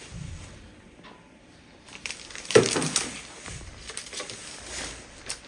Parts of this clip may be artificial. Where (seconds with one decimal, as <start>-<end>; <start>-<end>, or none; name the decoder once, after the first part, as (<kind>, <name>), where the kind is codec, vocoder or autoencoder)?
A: 0.0-4.4 (vocoder, BigVGAN v2); 5.1-5.5